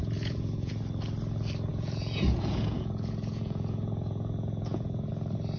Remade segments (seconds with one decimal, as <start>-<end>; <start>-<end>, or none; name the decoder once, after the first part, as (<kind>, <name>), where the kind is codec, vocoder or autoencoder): 0.0-0.7 (vocoder, Vocos); 1.7-5.1